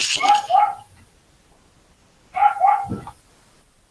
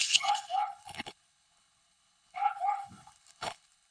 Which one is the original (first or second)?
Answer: first